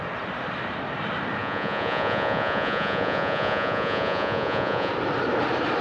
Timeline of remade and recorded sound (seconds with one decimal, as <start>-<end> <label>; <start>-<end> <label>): 0.0-1.4 recorded; 1.4-4.9 remade; 4.9-5.8 recorded